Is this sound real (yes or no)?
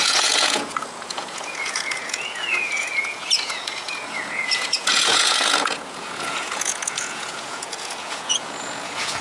no